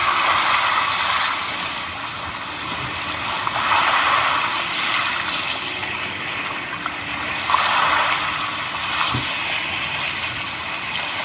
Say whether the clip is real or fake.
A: real